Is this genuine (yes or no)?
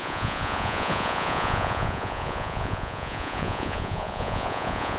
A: no